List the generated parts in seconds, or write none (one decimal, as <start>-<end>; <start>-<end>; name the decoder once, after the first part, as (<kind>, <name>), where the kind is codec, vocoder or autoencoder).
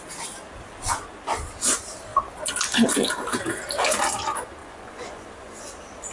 4.6-5.6 (vocoder, Vocos)